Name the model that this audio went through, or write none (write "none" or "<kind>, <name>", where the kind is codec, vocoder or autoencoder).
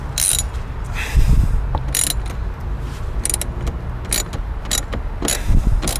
none